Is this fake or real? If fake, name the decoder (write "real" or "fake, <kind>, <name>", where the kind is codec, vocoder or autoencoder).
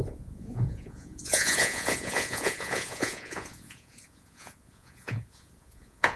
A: fake, vocoder, Vocos